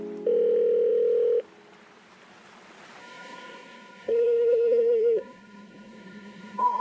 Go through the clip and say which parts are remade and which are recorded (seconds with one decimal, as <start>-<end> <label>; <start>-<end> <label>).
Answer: 0.0-3.0 recorded; 3.0-6.8 remade

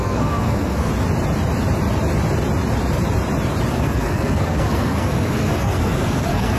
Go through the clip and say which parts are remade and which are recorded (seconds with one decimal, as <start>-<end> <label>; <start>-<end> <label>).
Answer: 0.0-0.9 remade; 0.9-3.7 recorded; 3.7-6.6 remade

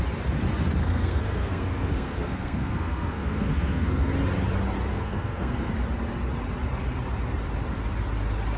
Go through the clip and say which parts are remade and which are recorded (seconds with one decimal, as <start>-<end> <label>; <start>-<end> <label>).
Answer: 0.0-0.8 recorded; 0.8-4.1 remade; 4.1-4.9 recorded; 4.9-5.7 remade; 5.7-8.6 recorded